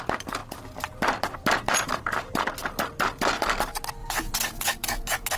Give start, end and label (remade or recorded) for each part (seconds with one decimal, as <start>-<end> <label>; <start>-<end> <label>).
0.0-4.0 recorded; 4.0-5.4 remade